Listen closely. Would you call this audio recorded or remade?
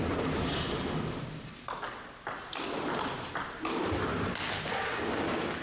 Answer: recorded